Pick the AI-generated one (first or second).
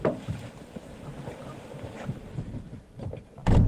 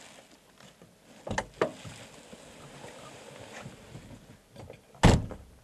first